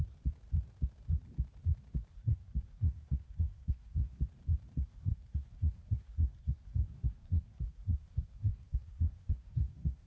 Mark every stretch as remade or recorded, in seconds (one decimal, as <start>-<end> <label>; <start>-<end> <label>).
0.0-2.1 recorded; 2.1-4.2 remade; 4.2-4.8 recorded; 4.8-10.1 remade